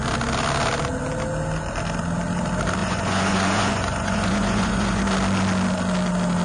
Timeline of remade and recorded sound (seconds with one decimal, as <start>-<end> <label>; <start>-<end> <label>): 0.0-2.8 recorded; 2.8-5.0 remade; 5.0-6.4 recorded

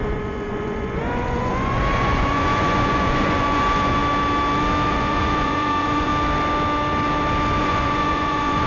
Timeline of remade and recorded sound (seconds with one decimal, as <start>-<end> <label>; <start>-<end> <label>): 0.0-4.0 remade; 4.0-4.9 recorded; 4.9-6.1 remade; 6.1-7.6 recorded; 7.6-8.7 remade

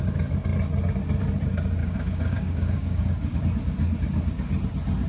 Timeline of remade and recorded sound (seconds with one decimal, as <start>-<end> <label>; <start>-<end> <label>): 0.0-1.8 recorded; 1.8-3.4 remade; 3.4-5.1 recorded

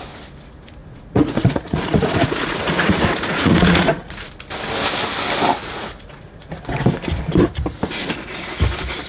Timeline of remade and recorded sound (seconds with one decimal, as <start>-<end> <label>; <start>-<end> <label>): 0.0-0.8 recorded; 0.8-4.3 remade; 4.3-5.6 recorded; 5.6-6.6 remade; 6.6-9.1 recorded

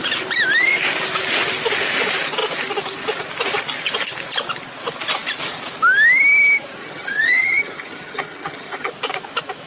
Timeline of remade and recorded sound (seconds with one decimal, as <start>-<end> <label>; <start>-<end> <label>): 0.0-6.8 recorded; 6.8-8.9 remade; 8.9-9.7 recorded